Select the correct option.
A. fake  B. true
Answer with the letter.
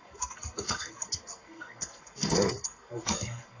A